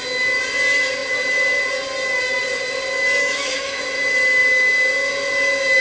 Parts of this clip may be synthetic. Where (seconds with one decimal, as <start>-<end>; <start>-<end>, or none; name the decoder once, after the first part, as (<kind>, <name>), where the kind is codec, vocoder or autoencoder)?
3.2-3.8 (autoencoder, DAC-VAE)